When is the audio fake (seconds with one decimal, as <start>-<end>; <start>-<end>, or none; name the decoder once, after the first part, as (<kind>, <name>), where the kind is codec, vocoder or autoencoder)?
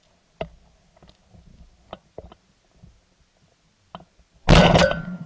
4.6-5.3 (vocoder, BigVGAN v2)